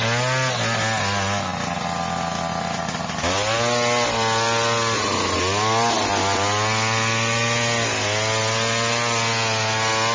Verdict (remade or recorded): recorded